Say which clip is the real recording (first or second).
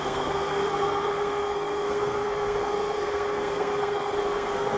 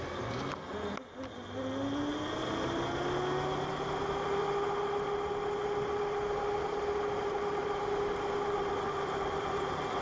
second